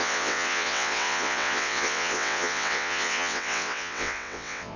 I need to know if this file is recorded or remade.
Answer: remade